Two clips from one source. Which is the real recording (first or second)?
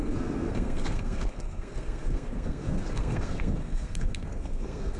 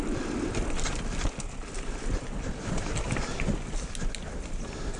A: second